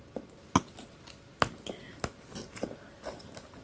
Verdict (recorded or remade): recorded